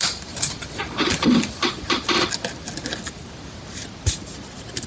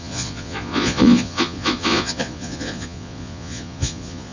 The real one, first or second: first